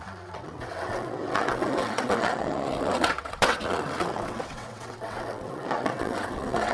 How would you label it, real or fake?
fake